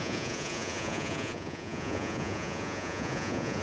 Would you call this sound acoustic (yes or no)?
no